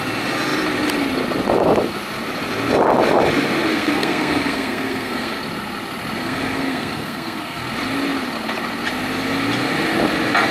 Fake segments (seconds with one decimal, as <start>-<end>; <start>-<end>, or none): 3.7-5.4; 6.2-7.6